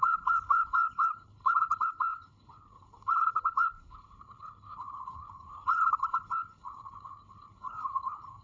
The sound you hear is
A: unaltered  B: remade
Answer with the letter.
B